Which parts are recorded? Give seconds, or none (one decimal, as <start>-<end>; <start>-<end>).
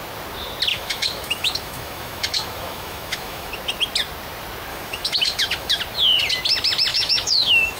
0.0-0.7; 3.5-4.7; 5.8-6.9